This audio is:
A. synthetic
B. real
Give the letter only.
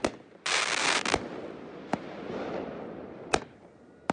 B